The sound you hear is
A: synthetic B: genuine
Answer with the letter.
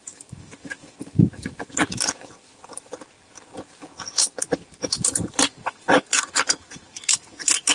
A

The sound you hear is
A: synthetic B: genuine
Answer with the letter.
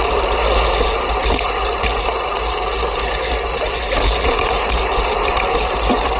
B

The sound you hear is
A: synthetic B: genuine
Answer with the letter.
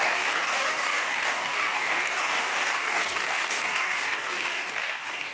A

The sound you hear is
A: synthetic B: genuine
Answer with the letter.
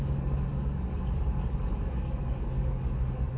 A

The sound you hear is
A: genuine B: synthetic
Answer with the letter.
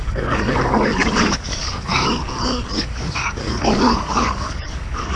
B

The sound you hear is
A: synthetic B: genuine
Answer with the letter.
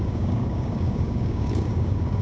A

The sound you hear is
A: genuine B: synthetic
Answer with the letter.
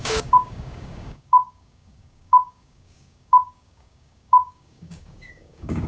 B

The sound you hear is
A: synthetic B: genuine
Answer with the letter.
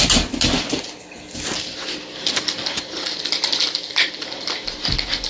B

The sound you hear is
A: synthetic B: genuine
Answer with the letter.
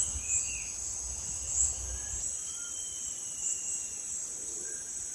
B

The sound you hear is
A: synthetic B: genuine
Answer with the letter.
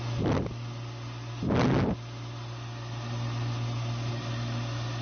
B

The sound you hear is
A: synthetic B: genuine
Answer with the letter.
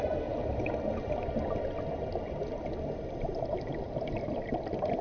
B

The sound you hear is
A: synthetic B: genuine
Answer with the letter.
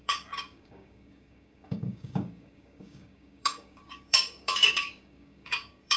A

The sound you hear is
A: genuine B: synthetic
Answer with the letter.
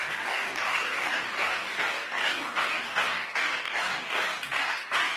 B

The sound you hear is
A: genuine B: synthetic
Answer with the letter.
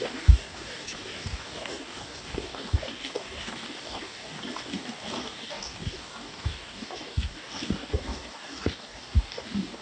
B